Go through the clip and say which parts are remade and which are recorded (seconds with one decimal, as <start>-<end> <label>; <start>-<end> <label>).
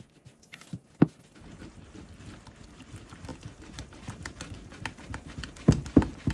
0.0-6.3 recorded